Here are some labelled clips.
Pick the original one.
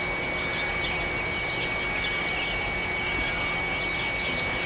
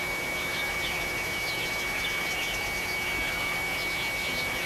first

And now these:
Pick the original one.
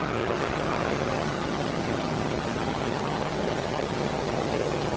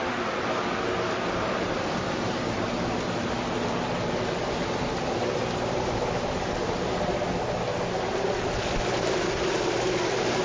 second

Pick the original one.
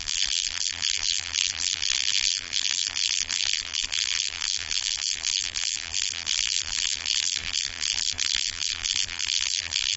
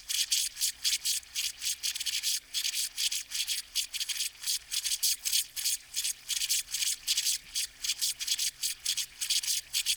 second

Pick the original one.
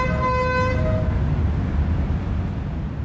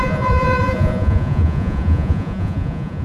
first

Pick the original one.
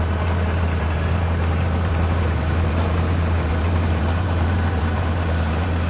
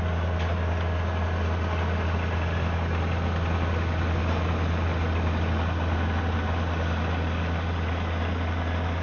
second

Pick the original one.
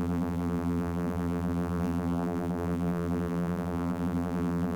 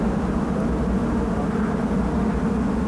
second